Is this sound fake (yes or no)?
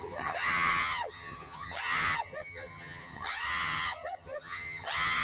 yes